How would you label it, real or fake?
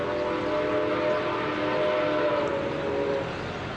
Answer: real